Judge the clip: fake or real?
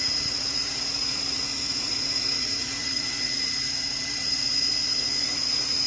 fake